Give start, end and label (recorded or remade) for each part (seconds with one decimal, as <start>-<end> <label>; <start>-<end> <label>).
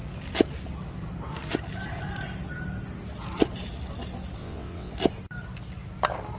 0.0-4.4 recorded; 4.4-4.9 remade; 4.9-6.4 recorded